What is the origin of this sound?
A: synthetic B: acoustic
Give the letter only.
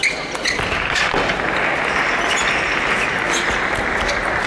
B